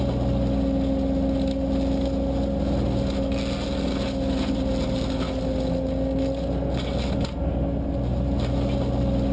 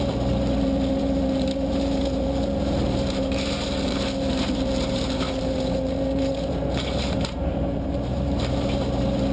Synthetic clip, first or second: second